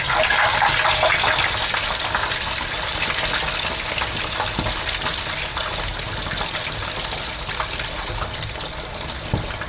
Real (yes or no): yes